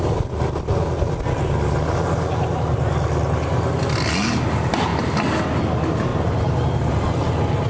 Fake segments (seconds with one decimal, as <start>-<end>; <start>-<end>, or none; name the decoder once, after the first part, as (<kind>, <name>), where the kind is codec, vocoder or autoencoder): none